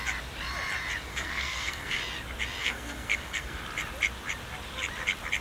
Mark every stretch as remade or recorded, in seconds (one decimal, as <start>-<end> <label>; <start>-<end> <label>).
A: 0.0-1.1 recorded; 1.1-2.0 remade; 2.0-2.6 recorded; 2.6-3.6 remade; 3.6-5.4 recorded